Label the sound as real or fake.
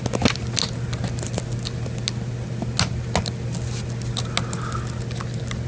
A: real